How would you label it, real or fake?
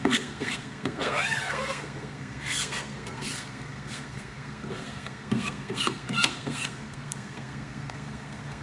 fake